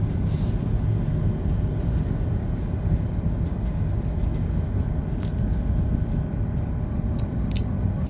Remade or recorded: recorded